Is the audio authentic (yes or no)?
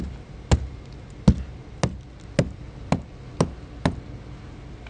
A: yes